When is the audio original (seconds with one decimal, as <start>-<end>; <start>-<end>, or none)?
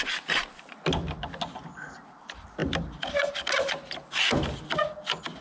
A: 0.0-5.4